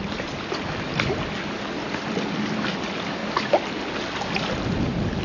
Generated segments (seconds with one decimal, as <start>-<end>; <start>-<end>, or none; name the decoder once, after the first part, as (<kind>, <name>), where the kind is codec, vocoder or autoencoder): none

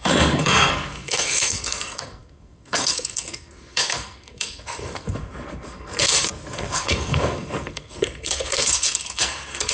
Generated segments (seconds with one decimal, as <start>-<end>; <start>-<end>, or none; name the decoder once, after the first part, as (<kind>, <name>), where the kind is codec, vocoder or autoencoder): 0.0-9.7 (codec, SNAC)

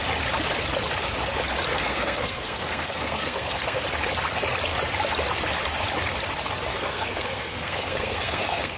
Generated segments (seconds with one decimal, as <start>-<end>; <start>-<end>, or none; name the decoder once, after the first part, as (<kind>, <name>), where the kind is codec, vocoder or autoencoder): 1.7-3.8 (codec, SNAC); 6.7-8.8

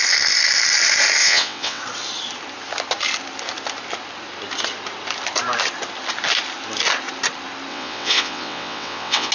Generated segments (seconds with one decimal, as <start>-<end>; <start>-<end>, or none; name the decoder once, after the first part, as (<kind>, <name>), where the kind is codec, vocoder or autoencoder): 1.2-1.8 (vocoder, WaveNeXt); 7.7-9.3

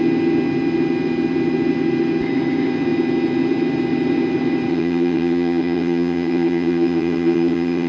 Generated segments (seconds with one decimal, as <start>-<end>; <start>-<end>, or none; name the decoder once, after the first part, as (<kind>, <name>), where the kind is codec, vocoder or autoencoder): 4.7-7.9 (vocoder, HiFi-GAN)

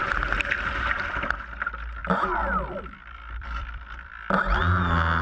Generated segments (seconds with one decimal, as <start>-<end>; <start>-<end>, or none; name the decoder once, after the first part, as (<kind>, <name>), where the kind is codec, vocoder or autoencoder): 2.0-4.4 (vocoder, BigVGAN v2)

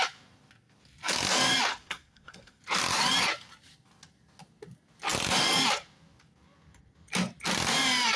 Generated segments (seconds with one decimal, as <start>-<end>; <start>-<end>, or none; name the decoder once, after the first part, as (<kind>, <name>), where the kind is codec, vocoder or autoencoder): 1.7-2.6 (codec, SNAC)

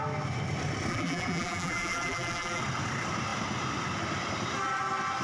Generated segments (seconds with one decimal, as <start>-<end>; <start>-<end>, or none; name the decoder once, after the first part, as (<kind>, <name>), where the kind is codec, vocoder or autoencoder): 0.9-2.6 (vocoder, BigVGAN v2)